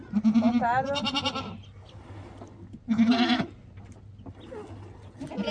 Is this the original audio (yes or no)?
yes